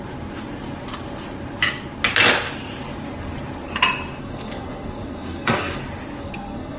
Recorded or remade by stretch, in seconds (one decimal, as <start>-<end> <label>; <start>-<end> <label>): 0.0-4.2 recorded; 4.2-5.8 remade; 5.8-6.2 recorded; 6.2-6.8 remade